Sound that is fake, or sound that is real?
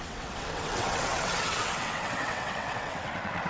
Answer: fake